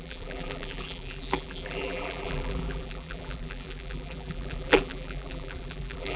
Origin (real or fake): fake